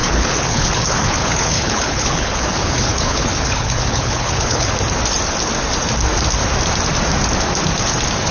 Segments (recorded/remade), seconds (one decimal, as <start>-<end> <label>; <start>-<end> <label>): 0.0-4.7 remade; 4.7-8.3 recorded